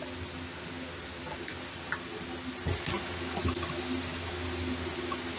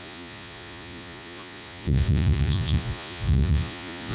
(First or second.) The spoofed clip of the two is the second